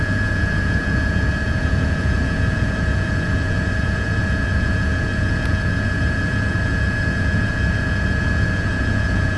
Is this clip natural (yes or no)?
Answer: no